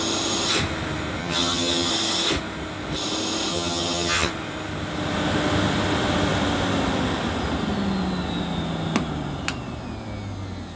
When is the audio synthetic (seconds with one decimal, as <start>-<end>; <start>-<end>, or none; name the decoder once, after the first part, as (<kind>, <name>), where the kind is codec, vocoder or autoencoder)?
1.2-1.9 (vocoder, HiFi-GAN); 3.5-4.3